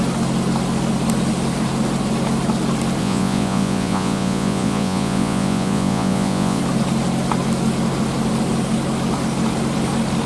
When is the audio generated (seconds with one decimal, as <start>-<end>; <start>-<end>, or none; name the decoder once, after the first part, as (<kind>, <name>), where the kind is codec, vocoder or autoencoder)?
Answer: 3.0-6.6 (vocoder, Vocos)